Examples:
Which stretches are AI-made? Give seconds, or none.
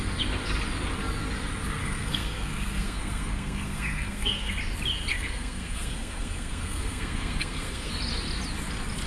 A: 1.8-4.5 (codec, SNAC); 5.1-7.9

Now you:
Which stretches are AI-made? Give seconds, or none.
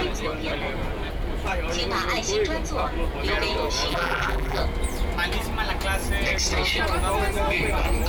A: 3.9-4.6 (vocoder, BigVGAN v2)